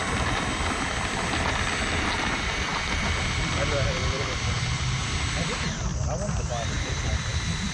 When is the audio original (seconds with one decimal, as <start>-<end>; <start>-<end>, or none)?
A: 0.0-7.7